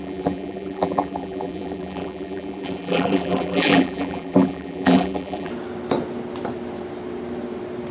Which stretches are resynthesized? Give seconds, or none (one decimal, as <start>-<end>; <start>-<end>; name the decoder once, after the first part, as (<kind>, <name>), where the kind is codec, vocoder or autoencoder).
0.0-5.5 (vocoder, BigVGAN v2)